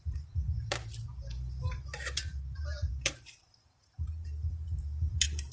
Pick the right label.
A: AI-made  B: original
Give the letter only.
A